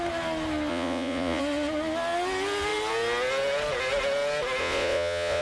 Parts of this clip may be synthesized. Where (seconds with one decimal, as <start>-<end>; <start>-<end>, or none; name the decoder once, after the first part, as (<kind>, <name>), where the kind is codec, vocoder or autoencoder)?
0.7-1.4 (vocoder, Vocos); 4.6-5.4